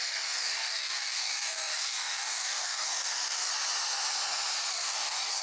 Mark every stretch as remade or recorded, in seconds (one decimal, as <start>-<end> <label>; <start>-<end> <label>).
0.0-3.5 remade; 3.5-4.7 recorded; 4.7-5.4 remade